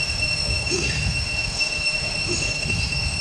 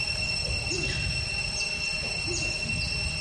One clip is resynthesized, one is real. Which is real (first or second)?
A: second